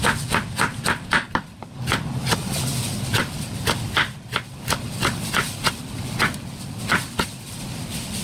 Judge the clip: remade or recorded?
recorded